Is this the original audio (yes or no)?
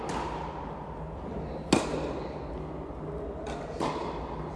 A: yes